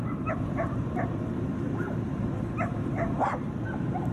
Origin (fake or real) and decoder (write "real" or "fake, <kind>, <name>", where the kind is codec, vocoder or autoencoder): fake, vocoder, BigVGAN v2